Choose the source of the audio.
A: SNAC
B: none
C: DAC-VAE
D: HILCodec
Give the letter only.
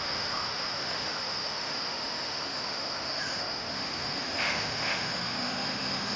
C